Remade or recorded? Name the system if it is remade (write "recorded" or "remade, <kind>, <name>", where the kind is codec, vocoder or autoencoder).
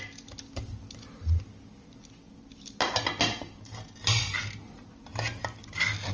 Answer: recorded